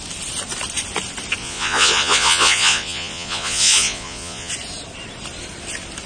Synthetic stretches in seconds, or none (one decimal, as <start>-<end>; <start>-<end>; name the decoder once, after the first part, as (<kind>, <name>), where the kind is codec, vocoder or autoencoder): 1.4-4.5 (vocoder, Vocos)